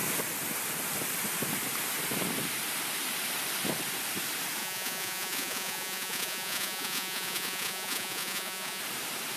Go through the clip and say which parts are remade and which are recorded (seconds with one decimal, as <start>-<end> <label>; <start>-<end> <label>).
0.0-4.6 recorded; 4.6-8.8 remade; 8.8-9.4 recorded